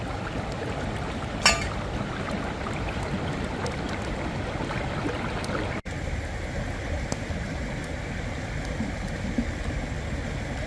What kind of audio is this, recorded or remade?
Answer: recorded